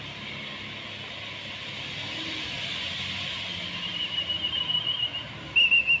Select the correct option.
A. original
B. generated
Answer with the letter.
A